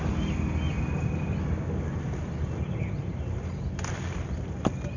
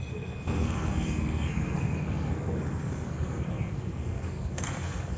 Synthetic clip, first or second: second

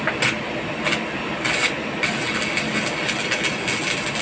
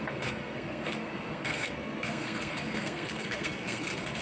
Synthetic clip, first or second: second